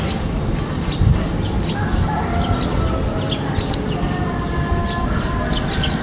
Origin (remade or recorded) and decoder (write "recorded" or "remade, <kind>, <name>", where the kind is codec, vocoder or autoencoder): recorded